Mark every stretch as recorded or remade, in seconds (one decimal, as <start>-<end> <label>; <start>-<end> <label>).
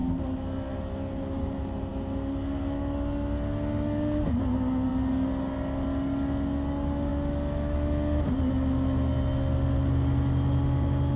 0.0-11.2 recorded